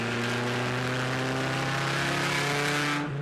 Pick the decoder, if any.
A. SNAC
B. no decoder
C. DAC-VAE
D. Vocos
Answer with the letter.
B